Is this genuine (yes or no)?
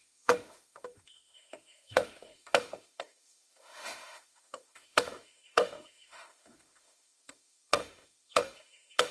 no